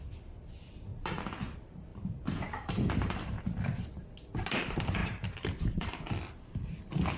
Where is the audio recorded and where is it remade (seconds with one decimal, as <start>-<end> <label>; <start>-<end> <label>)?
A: 0.0-0.9 recorded; 0.9-1.4 remade; 1.4-1.9 recorded; 1.9-3.4 remade; 3.4-5.0 recorded; 5.0-6.0 remade; 6.0-7.2 recorded